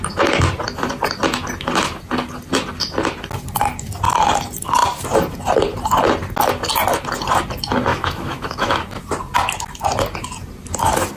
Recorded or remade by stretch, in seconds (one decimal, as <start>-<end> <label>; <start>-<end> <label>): 0.0-7.9 recorded; 7.9-8.8 remade; 8.8-11.2 recorded